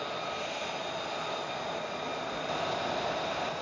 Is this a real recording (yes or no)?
yes